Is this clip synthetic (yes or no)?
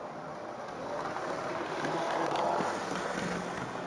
no